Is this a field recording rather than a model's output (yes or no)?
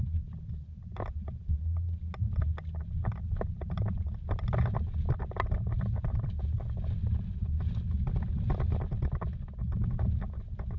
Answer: yes